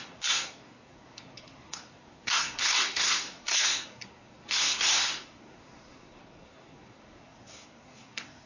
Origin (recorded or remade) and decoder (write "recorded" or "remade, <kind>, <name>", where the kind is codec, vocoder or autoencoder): remade, codec, SNAC